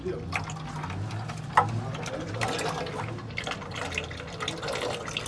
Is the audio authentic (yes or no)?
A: yes